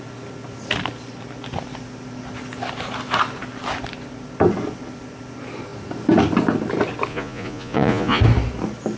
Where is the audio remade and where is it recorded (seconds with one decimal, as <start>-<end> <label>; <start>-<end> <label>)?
0.0-7.1 recorded; 7.1-8.2 remade; 8.2-9.0 recorded